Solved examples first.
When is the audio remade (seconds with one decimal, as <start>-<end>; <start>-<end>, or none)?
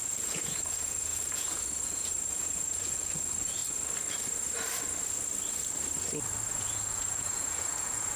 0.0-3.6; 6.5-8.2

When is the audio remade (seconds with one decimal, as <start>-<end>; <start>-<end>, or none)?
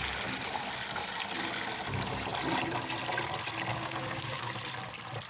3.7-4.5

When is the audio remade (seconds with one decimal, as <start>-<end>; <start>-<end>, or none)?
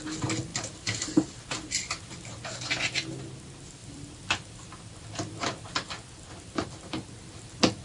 0.5-3.2; 3.8-6.9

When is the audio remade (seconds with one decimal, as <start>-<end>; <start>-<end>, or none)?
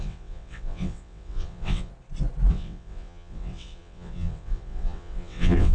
0.0-1.9; 2.5-5.7